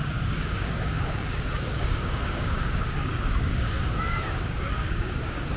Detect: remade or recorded remade